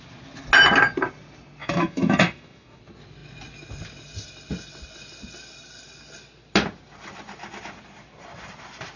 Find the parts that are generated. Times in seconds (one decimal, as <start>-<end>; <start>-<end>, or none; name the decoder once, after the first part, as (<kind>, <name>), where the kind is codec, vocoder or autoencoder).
1.6-2.8 (autoencoder, DAC-VAE)